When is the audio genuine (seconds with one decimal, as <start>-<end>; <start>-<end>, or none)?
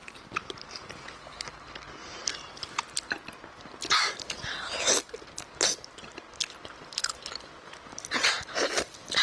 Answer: 0.0-9.2